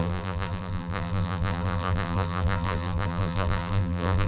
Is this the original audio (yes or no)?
no